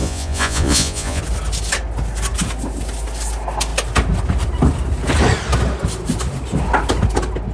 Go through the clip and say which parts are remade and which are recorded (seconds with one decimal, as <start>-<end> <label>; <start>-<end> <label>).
0.0-1.2 remade; 1.2-7.5 recorded